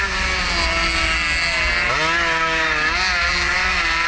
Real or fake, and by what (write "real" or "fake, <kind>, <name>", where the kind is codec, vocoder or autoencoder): real